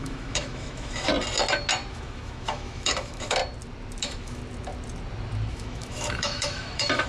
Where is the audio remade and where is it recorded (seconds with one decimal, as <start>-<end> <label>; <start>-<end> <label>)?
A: 0.0-1.1 remade; 1.1-1.9 recorded; 1.9-3.4 remade; 3.4-4.0 recorded; 4.0-4.4 remade; 4.4-5.5 recorded; 5.5-7.1 remade